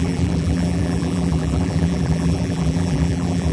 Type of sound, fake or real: fake